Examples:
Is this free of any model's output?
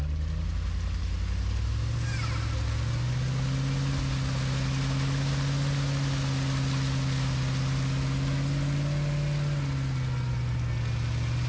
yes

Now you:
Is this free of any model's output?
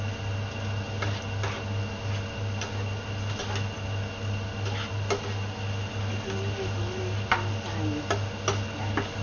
yes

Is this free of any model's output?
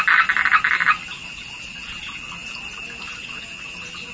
yes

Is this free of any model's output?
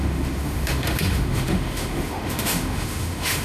no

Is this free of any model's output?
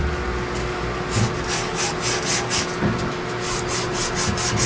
yes